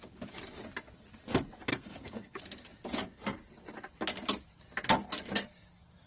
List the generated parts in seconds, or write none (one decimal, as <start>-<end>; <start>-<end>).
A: 1.7-2.4